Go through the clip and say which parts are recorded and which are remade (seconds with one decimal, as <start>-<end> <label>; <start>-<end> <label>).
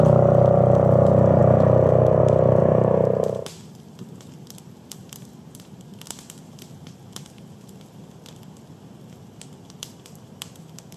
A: 0.0-11.0 recorded